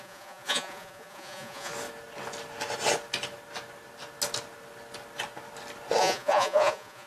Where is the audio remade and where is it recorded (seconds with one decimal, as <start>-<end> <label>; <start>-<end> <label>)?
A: 0.0-1.7 remade; 1.7-6.0 recorded; 6.0-7.1 remade